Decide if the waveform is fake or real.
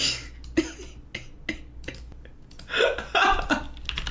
real